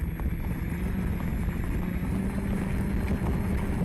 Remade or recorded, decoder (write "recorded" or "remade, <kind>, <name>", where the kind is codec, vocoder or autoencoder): recorded